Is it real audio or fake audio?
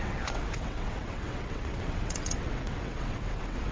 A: fake